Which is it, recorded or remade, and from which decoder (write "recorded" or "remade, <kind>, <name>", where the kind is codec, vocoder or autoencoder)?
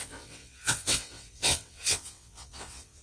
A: remade, vocoder, WaveNeXt